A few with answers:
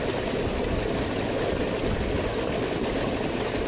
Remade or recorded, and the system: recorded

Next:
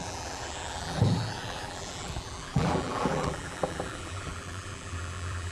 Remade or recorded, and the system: remade, vocoder, BigVGAN v2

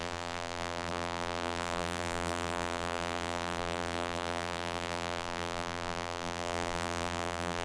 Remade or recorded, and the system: remade, vocoder, BigVGAN v2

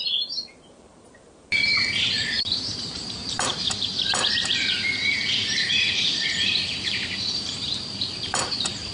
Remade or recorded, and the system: remade, vocoder, BigVGAN v2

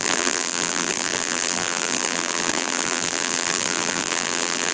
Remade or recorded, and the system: remade, vocoder, BigVGAN v2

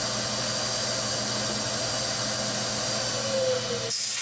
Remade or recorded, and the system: recorded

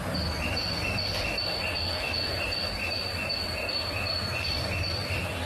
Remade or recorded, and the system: recorded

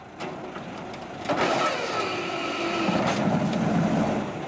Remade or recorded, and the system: recorded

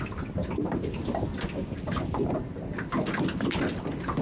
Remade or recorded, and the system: recorded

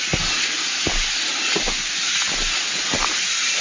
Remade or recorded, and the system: recorded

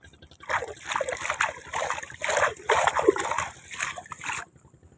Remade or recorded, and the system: remade, vocoder, BigVGAN v2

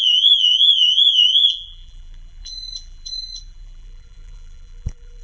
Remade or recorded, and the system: remade, vocoder, BigVGAN v2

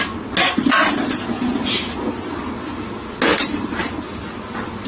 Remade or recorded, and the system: recorded